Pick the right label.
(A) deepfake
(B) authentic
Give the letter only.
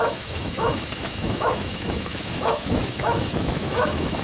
A